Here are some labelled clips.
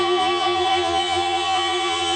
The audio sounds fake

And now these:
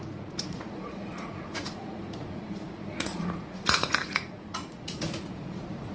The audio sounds fake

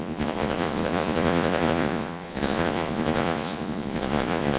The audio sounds fake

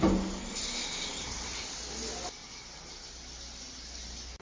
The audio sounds real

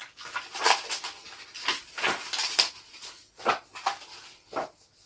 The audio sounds real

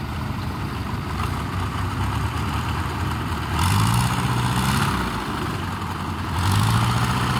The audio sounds real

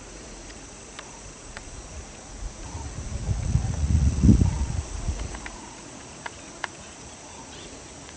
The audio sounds fake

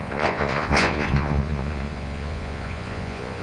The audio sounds fake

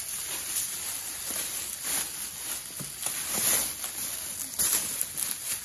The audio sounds real